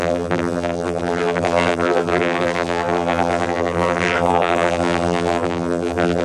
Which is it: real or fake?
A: fake